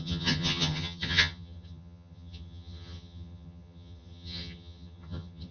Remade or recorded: remade